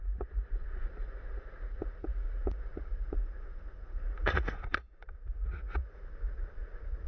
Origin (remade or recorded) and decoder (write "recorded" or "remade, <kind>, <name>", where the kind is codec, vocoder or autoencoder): remade, vocoder, Vocos